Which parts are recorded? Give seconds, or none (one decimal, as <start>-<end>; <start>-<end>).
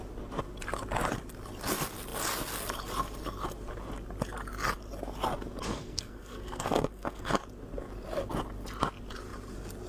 0.0-5.7; 7.3-9.9